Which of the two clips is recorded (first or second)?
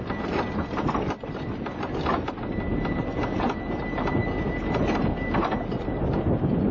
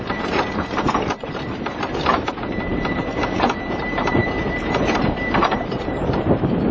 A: first